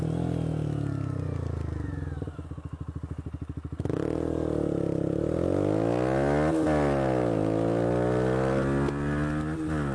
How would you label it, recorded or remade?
recorded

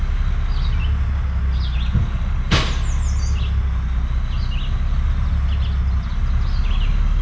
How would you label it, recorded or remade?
recorded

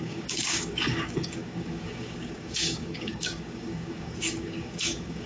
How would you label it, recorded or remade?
remade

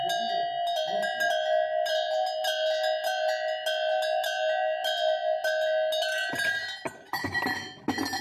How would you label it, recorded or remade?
recorded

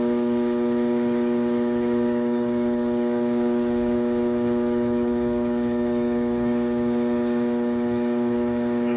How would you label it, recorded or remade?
remade